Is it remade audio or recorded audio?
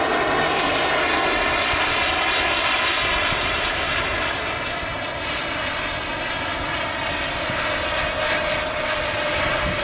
recorded